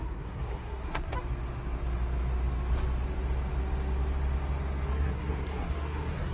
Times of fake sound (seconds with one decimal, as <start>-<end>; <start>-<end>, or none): 0.0-1.1; 4.9-6.3